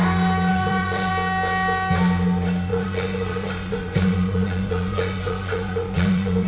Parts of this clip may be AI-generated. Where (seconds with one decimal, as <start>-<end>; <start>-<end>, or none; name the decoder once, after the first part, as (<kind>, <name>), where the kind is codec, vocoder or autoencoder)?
0.5-1.1 (vocoder, Vocos); 2.7-6.5